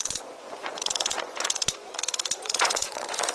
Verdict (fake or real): fake